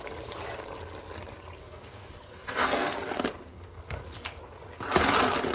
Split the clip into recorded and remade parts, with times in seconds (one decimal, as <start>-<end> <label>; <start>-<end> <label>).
0.0-1.6 recorded; 1.6-2.9 remade; 2.9-3.5 recorded; 3.5-4.4 remade; 4.4-5.5 recorded